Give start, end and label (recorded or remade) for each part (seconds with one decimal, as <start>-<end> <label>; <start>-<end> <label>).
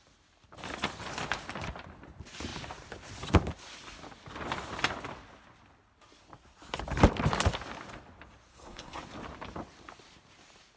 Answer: 0.0-8.5 recorded; 8.5-9.0 remade; 9.0-10.8 recorded